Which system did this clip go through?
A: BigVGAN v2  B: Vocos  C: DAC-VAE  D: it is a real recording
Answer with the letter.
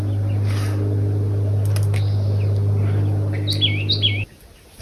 D